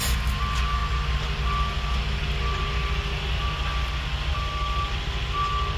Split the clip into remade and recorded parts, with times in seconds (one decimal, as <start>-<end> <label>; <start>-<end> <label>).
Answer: 0.0-5.8 recorded